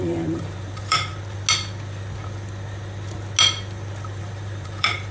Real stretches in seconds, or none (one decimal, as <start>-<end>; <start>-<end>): 1.1-4.2

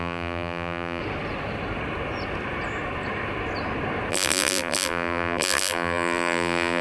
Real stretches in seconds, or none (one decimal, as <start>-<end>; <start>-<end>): 1.0-4.1

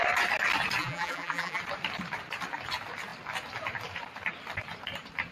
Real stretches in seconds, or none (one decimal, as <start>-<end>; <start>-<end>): 0.0-0.8; 1.6-5.3

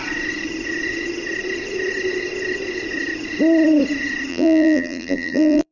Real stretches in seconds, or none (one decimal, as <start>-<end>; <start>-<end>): 0.0-4.3

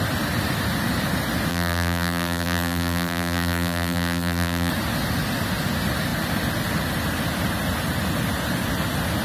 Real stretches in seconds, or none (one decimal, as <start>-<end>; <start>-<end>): 0.0-1.5; 4.7-9.2

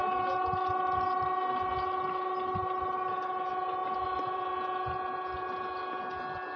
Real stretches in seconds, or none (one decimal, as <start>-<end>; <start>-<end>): 0.0-3.8; 4.4-6.6

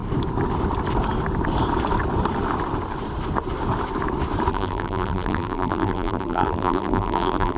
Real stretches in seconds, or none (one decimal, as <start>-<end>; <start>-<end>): 0.0-4.5

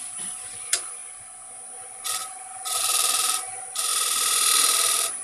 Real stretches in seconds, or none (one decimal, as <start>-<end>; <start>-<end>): 1.0-1.8; 3.9-4.5